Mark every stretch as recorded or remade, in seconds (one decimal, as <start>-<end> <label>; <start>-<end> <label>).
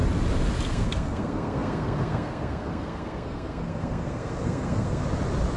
0.0-0.7 recorded; 0.7-5.0 remade; 5.0-5.6 recorded